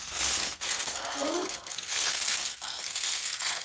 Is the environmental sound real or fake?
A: fake